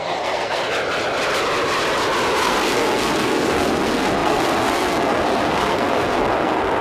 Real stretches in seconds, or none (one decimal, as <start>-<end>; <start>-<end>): 0.6-2.4

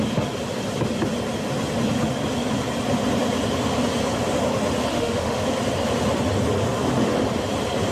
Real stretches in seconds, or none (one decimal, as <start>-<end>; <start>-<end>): 0.0-4.9; 5.5-7.9

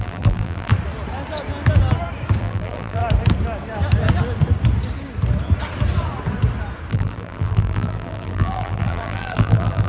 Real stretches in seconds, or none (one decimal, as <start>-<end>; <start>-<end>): 0.7-2.4; 3.0-6.9

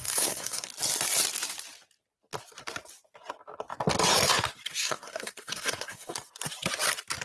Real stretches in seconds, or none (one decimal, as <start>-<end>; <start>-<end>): 0.7-4.7; 6.1-7.2

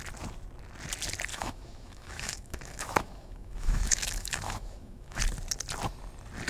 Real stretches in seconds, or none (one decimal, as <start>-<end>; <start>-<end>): 0.0-1.3; 5.2-6.5

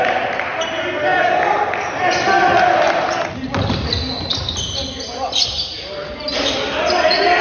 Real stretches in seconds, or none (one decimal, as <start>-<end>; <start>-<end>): 0.0-7.4

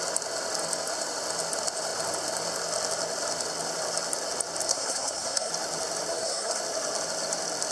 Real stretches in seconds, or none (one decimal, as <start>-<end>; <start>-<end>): 0.0-4.7; 5.5-6.1; 6.6-7.7

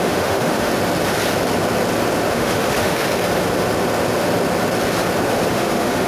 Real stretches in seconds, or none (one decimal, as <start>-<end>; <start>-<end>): 0.7-2.3; 3.1-5.5